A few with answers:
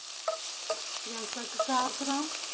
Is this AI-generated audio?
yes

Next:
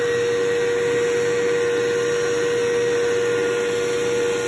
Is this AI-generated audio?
no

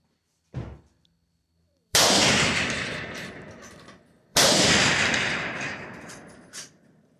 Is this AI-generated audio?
yes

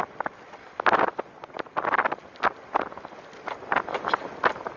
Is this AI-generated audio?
no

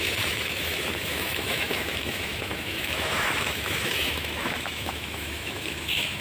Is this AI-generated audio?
yes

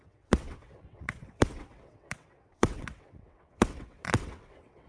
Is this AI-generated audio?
yes